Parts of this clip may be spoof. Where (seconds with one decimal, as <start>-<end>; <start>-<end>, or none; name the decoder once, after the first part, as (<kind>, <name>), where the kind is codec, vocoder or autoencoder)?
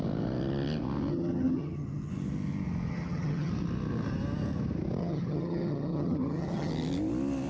1.1-2.1 (vocoder, HiFi-GAN); 2.9-3.5; 5.0-6.7